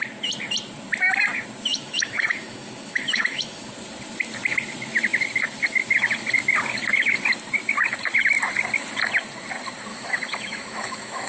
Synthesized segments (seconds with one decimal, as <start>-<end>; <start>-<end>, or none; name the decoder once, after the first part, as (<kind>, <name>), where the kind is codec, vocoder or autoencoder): 1.7-3.7 (autoencoder, DAC-VAE); 9.9-11.3